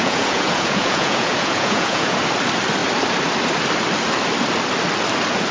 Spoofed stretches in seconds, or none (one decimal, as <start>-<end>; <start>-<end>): 0.0-2.2